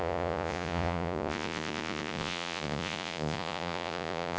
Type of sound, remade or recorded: remade